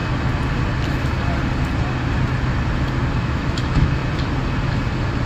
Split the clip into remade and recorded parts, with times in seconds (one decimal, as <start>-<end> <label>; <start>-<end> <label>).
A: 0.0-3.2 recorded; 3.2-4.0 remade; 4.0-5.3 recorded